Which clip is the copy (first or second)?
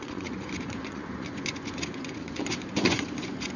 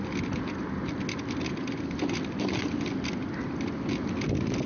first